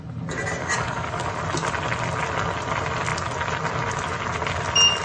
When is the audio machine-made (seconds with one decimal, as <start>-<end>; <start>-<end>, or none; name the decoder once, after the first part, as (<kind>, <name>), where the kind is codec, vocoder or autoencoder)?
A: 0.6-1.3 (codec, DAC)